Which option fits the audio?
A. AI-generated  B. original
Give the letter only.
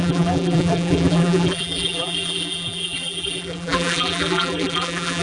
A